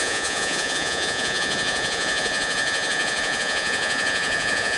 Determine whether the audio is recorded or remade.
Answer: remade